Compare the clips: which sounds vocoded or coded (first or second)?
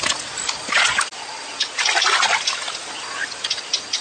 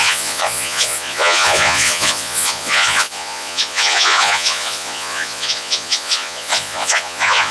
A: second